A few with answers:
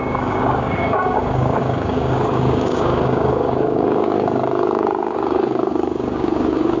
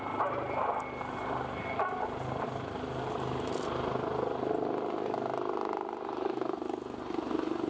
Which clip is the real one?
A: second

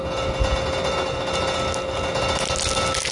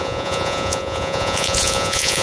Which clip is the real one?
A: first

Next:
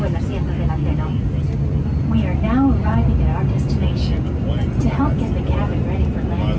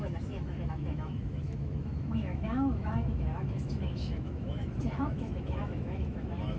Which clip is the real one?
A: first